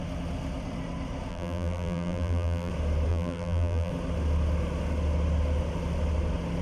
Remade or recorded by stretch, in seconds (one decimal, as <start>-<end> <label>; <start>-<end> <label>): 0.0-1.3 recorded; 1.3-2.7 remade; 2.7-3.1 recorded; 3.1-3.9 remade; 3.9-6.6 recorded